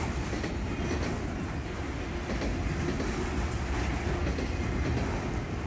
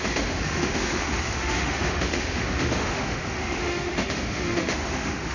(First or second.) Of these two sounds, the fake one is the second